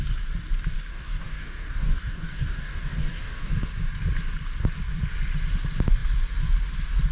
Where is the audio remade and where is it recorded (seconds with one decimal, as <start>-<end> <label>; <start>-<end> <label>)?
0.0-0.9 recorded; 0.9-3.5 remade; 3.5-7.1 recorded